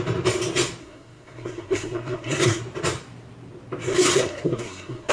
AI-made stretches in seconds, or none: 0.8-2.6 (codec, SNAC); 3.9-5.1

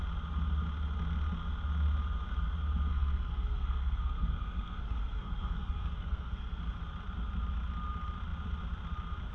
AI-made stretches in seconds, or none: 2.9-6.6 (codec, SNAC)